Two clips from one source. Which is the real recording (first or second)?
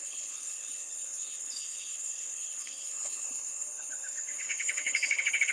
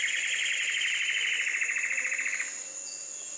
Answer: second